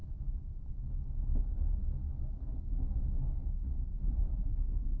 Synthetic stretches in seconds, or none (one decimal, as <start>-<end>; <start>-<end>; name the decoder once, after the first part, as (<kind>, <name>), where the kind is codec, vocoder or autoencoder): 3.9-5.0 (vocoder, BigVGAN v2)